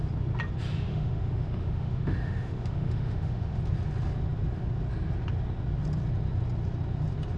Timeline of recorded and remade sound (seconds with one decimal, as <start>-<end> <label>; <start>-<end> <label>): 0.0-0.9 recorded; 0.9-3.6 remade; 3.6-7.4 recorded